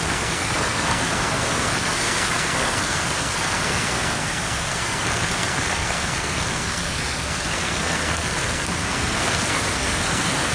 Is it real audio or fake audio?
fake